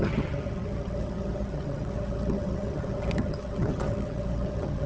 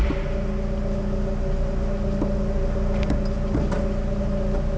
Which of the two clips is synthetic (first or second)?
first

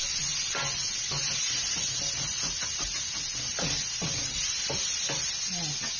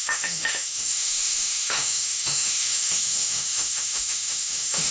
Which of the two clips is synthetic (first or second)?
second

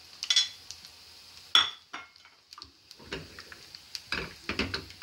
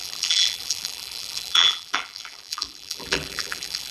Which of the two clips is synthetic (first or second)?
second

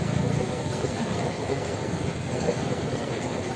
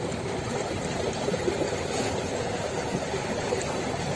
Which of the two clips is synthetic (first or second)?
first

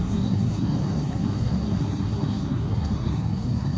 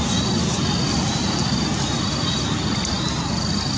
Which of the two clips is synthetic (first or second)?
first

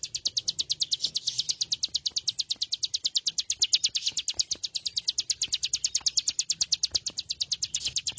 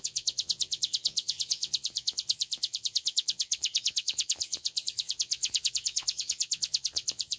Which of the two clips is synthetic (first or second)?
second